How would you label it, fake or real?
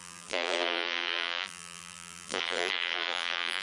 fake